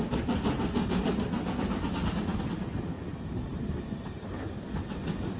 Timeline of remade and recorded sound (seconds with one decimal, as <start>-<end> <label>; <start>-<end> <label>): 0.0-5.4 recorded